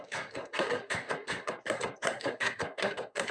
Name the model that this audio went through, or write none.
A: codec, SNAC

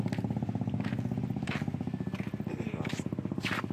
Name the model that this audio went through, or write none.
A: none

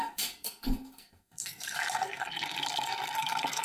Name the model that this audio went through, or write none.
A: codec, SNAC